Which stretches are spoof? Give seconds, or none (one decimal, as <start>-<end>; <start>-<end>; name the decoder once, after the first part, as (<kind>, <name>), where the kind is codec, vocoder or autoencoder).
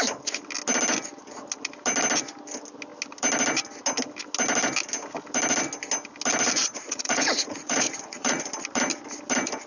6.6-8.5 (vocoder, Vocos)